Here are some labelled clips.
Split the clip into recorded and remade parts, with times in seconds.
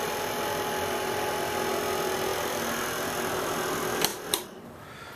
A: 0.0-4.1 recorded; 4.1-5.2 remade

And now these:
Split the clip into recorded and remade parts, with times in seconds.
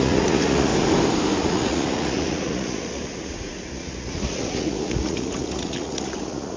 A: 0.0-0.7 remade; 0.7-1.4 recorded; 1.4-6.6 remade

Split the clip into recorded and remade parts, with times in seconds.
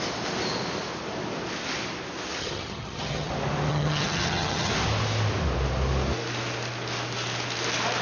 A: 0.0-2.4 recorded; 2.4-3.3 remade; 3.3-3.7 recorded; 3.7-4.7 remade; 4.7-8.0 recorded